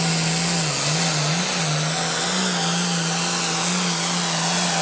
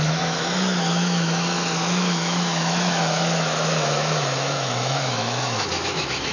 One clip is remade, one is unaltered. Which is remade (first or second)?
second